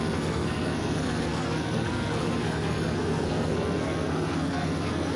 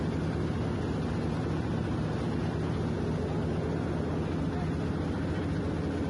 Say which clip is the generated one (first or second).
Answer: first